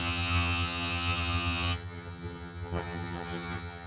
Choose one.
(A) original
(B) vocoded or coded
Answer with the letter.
B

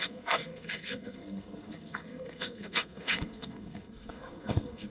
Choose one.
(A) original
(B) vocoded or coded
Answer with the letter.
B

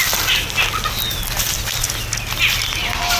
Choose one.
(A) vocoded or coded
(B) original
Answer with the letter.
B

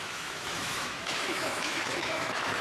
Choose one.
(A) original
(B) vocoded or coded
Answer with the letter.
B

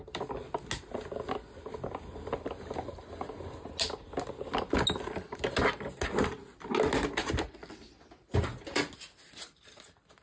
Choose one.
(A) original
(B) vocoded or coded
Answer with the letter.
A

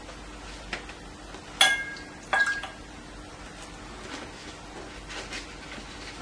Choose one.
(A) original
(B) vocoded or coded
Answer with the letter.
A